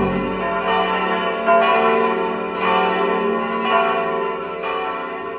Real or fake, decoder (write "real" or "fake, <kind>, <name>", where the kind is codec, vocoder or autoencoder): real